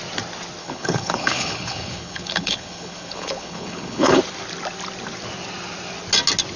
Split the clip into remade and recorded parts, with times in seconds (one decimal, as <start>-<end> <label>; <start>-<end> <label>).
0.0-0.6 recorded; 0.6-4.2 remade; 4.2-6.6 recorded